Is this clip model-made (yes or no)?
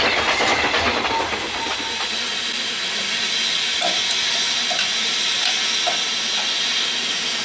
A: no